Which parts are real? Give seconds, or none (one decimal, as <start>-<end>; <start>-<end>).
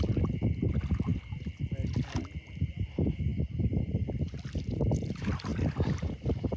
0.0-6.6